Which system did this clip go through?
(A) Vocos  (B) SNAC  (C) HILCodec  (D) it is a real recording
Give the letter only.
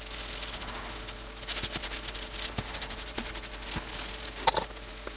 D